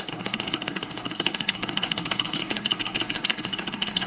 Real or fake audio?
fake